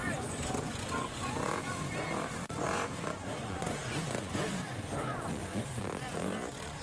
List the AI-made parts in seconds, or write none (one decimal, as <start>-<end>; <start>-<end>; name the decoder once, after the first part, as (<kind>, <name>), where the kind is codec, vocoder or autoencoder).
0.0-6.8 (vocoder, Vocos)